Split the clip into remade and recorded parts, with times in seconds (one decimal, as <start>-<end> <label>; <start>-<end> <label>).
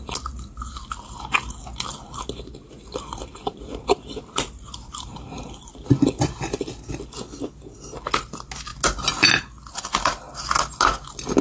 0.0-3.4 recorded; 3.4-5.9 remade; 5.9-11.4 recorded